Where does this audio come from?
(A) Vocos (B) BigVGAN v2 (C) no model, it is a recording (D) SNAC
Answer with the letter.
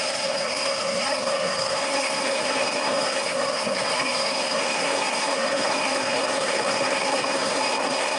D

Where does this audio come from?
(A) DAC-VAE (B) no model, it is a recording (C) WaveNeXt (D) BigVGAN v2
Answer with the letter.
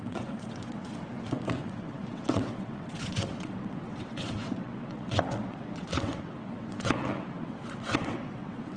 C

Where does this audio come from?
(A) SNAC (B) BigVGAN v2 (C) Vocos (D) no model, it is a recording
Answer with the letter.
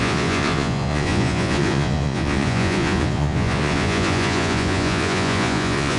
C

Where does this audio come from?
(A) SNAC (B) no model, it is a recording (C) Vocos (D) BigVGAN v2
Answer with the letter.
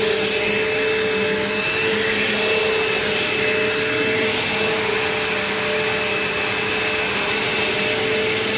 B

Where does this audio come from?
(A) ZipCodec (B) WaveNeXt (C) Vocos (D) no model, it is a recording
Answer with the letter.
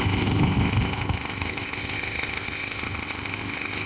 A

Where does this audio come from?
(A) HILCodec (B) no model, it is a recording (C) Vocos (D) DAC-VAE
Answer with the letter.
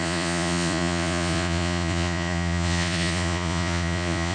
C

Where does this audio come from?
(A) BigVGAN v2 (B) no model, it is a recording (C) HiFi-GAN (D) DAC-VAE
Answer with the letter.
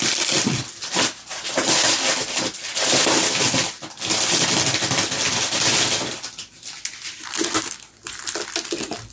B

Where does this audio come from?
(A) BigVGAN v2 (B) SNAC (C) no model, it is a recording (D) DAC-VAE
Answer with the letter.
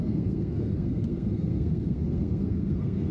B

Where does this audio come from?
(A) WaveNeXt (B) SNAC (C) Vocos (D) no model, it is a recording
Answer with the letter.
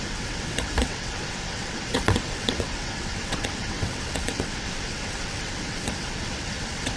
A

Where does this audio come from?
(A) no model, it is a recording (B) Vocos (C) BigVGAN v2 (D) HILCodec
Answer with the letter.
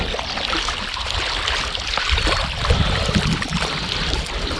A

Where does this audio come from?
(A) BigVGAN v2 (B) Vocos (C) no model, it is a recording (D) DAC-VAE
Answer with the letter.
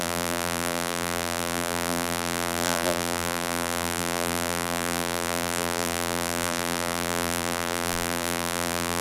A